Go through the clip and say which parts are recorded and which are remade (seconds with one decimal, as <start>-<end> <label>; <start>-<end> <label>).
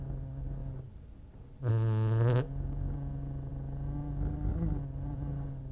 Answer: 0.0-5.7 recorded